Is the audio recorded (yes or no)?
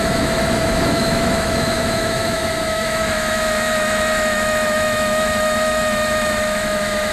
no